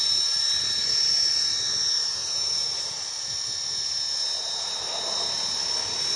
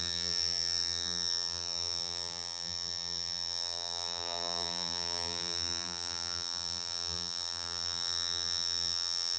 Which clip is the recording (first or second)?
first